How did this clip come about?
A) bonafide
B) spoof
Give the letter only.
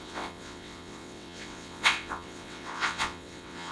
B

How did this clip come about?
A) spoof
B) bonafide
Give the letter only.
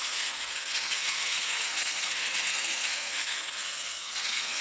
A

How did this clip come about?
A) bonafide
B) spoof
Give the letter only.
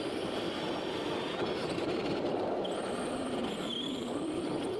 A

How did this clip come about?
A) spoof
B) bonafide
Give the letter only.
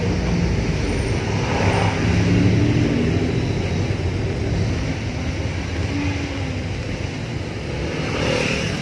B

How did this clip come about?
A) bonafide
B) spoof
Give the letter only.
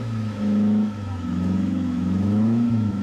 B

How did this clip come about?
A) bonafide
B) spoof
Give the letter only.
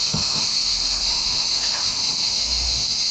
B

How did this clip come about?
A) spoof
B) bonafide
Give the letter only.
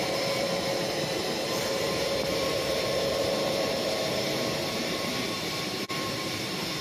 A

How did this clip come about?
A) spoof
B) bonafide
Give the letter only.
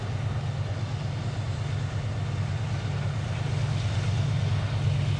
B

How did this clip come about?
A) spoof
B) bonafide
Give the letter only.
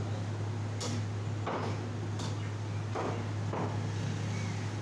B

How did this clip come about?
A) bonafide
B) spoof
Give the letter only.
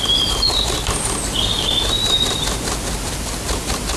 A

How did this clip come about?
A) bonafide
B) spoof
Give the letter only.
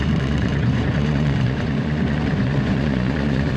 B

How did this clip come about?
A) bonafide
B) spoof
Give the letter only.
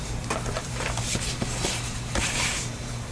B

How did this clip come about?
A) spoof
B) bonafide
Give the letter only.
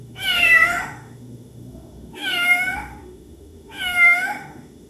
A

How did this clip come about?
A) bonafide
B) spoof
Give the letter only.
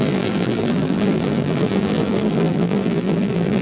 B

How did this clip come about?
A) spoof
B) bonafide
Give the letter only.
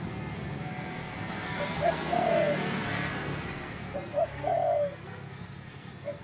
A